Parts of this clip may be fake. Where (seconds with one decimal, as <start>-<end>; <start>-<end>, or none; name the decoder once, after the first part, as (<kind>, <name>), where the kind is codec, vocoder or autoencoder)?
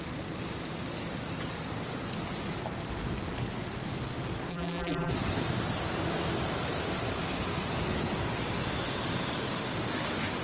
4.5-5.1 (vocoder, BigVGAN v2)